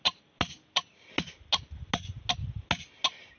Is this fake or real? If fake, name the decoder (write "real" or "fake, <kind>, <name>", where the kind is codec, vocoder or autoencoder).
real